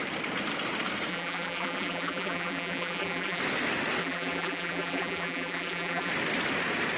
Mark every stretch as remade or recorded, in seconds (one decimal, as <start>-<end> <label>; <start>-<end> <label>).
0.0-1.1 recorded; 1.1-3.4 remade; 3.4-4.0 recorded; 4.0-6.1 remade; 6.1-7.0 recorded